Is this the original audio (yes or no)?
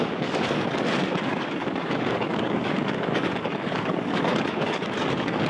no